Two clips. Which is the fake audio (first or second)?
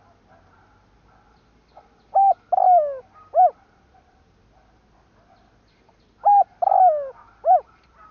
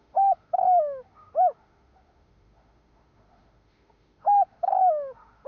second